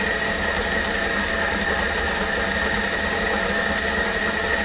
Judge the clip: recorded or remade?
recorded